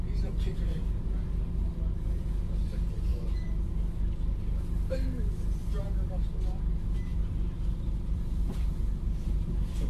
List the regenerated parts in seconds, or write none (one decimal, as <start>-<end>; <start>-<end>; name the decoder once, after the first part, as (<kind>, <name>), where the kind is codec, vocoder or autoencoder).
7.1-9.0 (vocoder, BigVGAN v2)